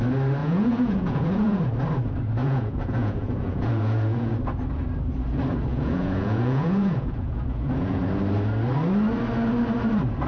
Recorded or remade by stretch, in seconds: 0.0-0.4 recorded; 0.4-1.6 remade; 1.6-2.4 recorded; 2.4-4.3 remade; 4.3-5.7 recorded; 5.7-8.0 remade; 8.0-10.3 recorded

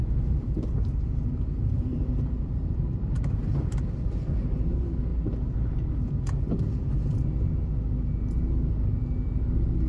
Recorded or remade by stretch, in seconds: 0.0-4.2 remade; 4.2-5.1 recorded; 5.1-6.1 remade; 6.1-9.9 recorded

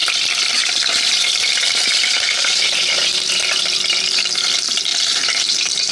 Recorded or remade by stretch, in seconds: 0.0-3.3 remade; 3.3-4.9 recorded; 4.9-5.9 remade

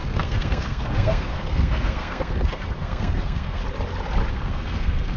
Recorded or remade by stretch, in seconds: 0.0-3.6 remade; 3.6-4.3 recorded; 4.3-5.2 remade

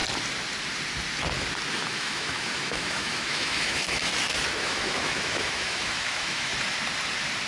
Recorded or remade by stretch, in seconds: 0.0-1.7 recorded; 1.7-4.1 remade; 4.1-4.6 recorded; 4.6-6.5 remade; 6.5-7.5 recorded

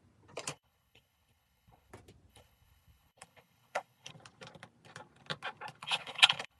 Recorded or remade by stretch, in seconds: 0.0-0.5 recorded; 0.5-1.9 remade; 1.9-2.3 recorded; 2.3-4.1 remade; 4.1-5.8 recorded; 5.8-6.6 remade